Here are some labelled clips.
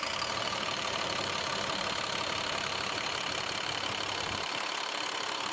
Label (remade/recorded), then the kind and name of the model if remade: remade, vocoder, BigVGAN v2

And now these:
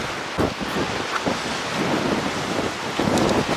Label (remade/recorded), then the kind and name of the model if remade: recorded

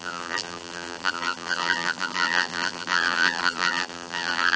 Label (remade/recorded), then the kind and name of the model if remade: remade, vocoder, BigVGAN v2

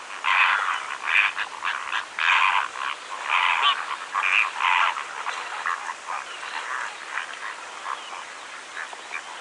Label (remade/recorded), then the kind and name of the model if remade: recorded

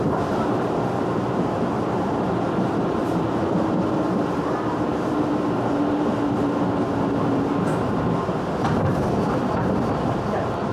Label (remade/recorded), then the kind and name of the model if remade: remade, vocoder, BigVGAN v2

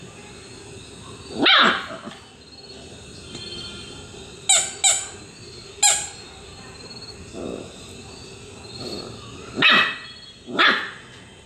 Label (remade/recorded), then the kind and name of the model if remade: recorded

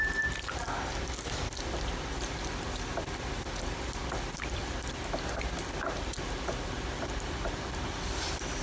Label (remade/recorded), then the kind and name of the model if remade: recorded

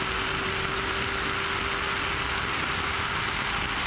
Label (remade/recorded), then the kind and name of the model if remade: recorded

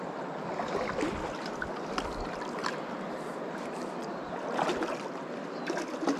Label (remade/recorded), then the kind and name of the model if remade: recorded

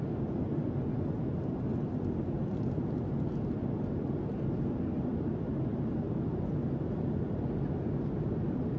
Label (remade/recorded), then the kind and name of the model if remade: recorded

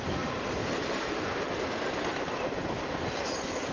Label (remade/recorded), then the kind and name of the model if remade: recorded